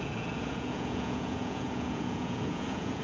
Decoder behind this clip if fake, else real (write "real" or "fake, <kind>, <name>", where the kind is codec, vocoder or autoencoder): fake, vocoder, Vocos